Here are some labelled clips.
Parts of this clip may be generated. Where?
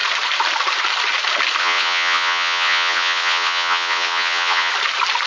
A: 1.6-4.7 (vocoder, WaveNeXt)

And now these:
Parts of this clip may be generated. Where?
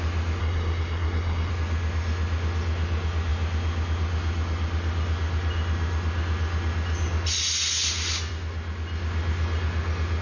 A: 0.4-1.5 (codec, SNAC)